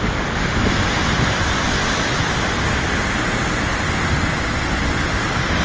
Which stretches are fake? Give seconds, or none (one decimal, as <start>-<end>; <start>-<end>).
1.0-1.9; 3.7-5.0